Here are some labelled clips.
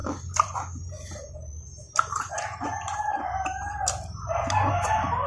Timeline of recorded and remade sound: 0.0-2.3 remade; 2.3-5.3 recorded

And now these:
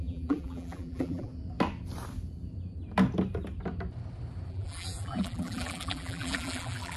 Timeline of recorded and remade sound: 0.0-1.3 remade; 1.3-4.5 recorded; 4.5-7.0 remade

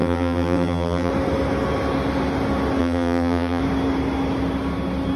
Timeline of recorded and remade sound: 0.0-1.1 remade; 1.1-2.8 recorded; 2.8-3.6 remade; 3.6-5.2 recorded

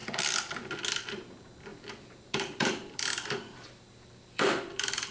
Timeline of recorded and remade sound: 0.0-1.7 recorded; 1.7-5.1 remade

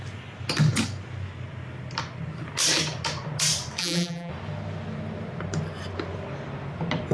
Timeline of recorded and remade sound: 0.0-3.8 recorded; 3.8-4.3 remade; 4.3-7.1 recorded

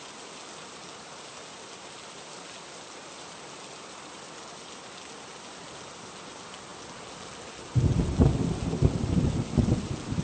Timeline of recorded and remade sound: 0.0-10.2 recorded